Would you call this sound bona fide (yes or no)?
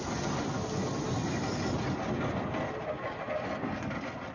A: yes